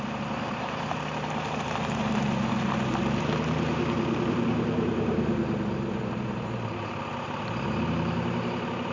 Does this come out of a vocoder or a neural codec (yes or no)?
yes